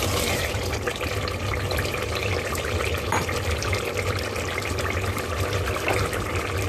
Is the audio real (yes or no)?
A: yes